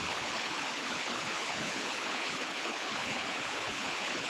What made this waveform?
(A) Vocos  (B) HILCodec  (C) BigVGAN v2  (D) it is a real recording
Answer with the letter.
B